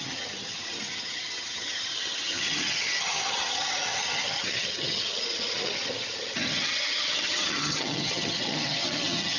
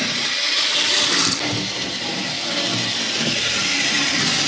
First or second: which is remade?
first